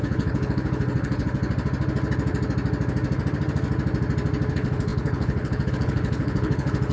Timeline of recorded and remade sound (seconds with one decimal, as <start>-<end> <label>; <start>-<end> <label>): 0.0-1.4 remade; 1.4-4.5 recorded; 4.5-6.9 remade